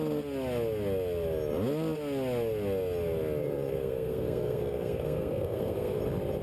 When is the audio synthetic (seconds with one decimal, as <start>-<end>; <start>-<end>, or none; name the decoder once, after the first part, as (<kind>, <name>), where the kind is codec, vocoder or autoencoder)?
3.4-6.0 (codec, SNAC)